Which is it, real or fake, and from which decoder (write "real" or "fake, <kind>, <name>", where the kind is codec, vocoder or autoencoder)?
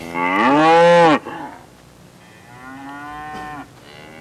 real